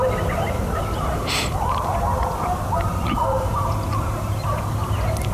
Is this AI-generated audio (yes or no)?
no